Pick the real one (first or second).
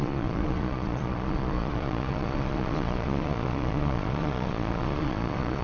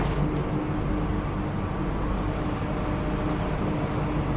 second